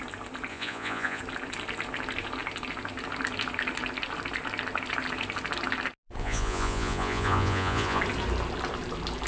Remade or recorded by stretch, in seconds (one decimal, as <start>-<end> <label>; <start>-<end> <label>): 0.0-0.5 recorded; 0.5-1.2 remade; 1.2-6.2 recorded; 6.2-8.0 remade; 8.0-9.3 recorded